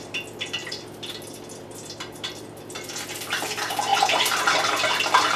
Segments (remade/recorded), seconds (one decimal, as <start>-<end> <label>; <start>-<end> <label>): 0.0-5.4 recorded